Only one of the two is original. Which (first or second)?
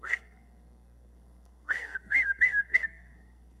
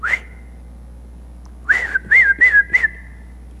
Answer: second